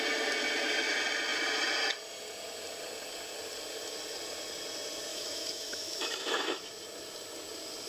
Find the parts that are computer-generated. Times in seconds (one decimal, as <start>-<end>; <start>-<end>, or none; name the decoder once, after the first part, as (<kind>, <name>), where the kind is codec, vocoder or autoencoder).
5.1-6.7 (autoencoder, DAC-VAE)